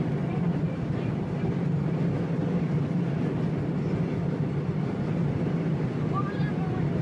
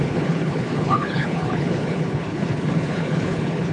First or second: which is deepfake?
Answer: second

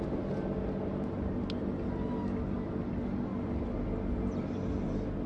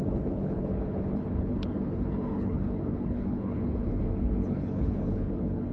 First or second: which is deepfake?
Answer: second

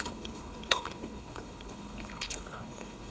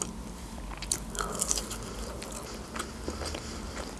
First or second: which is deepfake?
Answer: first